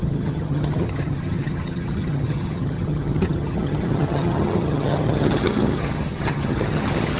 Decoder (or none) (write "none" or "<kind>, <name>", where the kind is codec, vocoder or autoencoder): vocoder, HiFi-GAN